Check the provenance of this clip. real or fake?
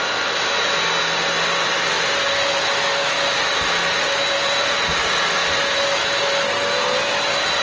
real